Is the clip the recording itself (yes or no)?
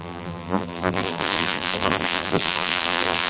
no